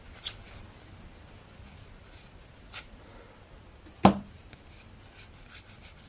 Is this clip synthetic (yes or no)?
no